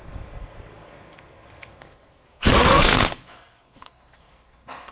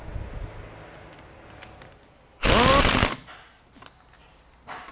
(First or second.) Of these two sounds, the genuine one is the second